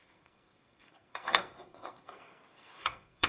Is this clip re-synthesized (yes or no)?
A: yes